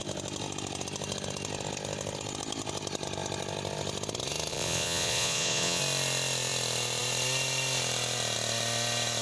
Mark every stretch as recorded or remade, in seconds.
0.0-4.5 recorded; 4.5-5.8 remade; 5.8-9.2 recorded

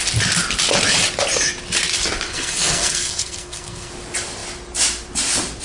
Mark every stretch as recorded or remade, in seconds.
0.0-2.3 recorded; 2.3-3.9 remade; 3.9-5.6 recorded

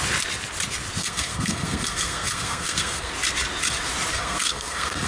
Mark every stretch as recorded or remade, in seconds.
0.0-1.0 recorded; 1.0-3.1 remade; 3.1-4.1 recorded; 4.1-5.1 remade

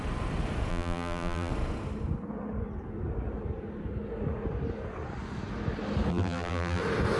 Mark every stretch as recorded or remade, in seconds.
0.0-0.7 recorded; 0.7-1.5 remade; 1.5-6.1 recorded; 6.1-6.8 remade; 6.8-7.2 recorded

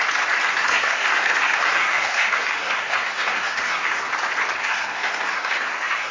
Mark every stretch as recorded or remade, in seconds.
0.0-0.5 recorded; 0.5-4.1 remade; 4.1-4.6 recorded; 4.6-6.1 remade